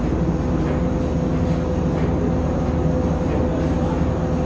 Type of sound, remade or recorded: recorded